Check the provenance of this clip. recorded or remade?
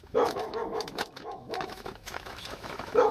remade